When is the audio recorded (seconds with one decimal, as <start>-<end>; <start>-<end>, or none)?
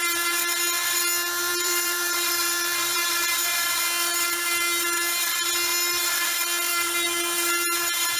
0.0-1.5; 5.5-6.7